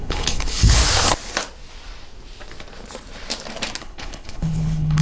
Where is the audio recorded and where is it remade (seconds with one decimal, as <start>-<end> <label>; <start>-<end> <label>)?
0.0-0.8 remade; 0.8-3.8 recorded; 3.8-5.0 remade